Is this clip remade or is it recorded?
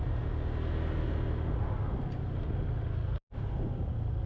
recorded